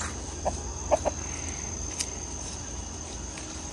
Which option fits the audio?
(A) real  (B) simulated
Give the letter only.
A